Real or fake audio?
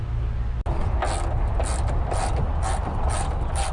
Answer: real